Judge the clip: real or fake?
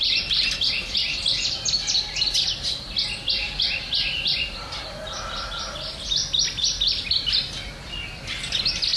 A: real